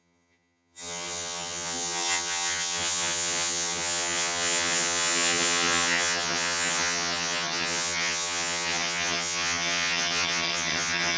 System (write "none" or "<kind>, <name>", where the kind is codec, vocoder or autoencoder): vocoder, HiFi-GAN